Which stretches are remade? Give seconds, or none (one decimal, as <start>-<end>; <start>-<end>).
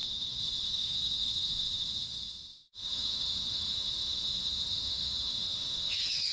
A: 0.0-6.3